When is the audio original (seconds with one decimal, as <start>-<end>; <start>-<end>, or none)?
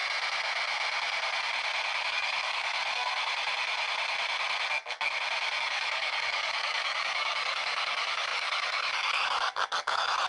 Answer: 0.0-2.1; 2.8-5.6